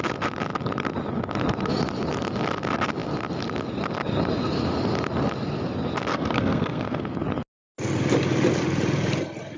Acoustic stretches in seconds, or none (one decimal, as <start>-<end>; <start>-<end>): 0.0-6.1; 7.0-9.6